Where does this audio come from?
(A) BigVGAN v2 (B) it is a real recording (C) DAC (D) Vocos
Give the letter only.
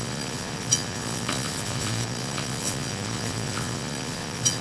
D